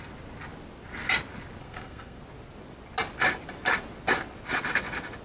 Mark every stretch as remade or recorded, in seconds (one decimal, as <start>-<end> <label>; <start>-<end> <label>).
0.0-1.6 recorded; 1.6-2.2 remade; 2.2-5.2 recorded